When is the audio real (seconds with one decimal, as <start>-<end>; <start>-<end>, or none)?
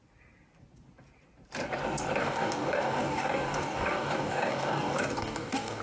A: 0.0-2.2